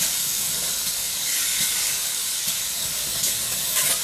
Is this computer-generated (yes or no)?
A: yes